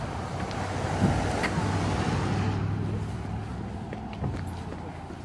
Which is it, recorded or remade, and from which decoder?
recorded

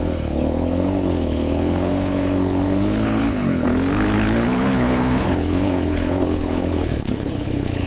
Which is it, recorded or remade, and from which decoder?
remade, codec, HILCodec